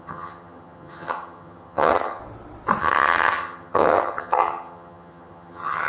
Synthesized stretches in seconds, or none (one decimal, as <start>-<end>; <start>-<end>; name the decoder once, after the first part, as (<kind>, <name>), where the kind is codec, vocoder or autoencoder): 0.0-2.2 (vocoder, HiFi-GAN); 2.8-5.9